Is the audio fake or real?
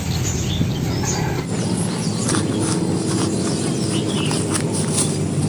real